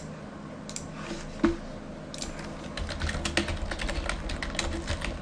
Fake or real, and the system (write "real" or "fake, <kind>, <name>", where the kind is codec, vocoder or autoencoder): real